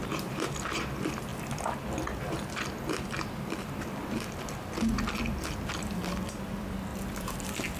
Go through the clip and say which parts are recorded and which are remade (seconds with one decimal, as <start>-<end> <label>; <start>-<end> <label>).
0.0-0.7 remade; 0.7-1.3 recorded; 1.3-2.7 remade; 2.7-6.9 recorded; 6.9-7.8 remade